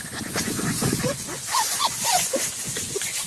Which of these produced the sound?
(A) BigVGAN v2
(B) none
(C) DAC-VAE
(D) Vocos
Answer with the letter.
D